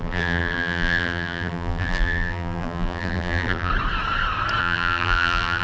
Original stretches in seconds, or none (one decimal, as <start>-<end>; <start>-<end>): 3.7-4.6